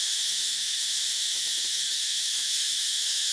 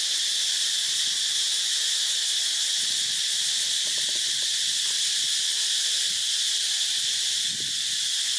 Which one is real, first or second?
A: second